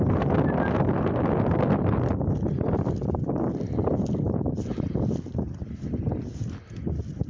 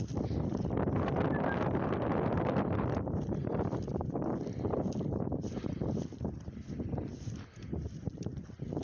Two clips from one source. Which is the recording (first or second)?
first